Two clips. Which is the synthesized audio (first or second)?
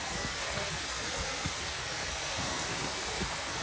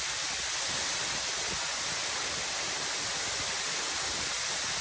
first